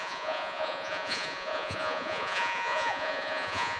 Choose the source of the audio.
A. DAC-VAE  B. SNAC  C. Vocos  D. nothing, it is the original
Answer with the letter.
C